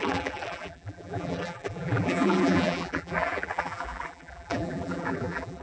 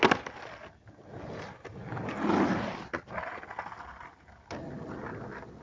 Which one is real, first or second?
second